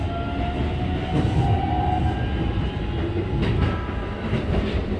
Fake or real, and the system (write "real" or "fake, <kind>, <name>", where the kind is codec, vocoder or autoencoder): real